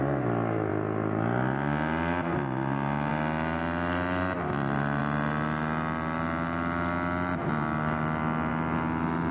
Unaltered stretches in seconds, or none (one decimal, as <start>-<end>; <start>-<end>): 0.0-9.3